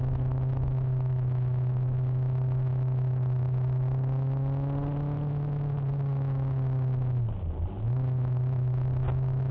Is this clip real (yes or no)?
yes